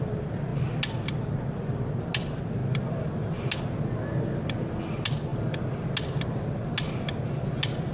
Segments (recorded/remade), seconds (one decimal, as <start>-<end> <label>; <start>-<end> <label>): 0.0-7.9 recorded